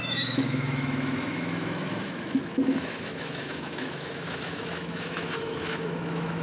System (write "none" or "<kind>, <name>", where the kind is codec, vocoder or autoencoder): autoencoder, DAC-VAE